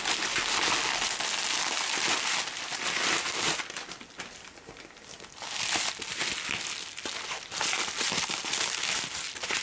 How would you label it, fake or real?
real